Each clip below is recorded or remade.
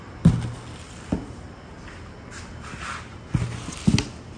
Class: recorded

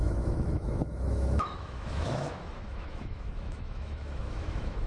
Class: remade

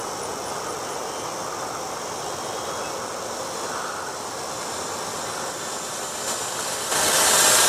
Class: recorded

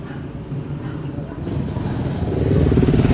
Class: recorded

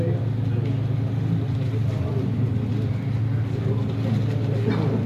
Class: recorded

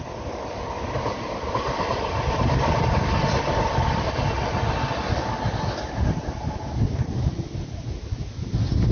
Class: recorded